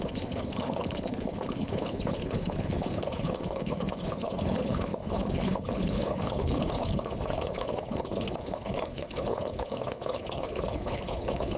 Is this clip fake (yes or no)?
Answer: yes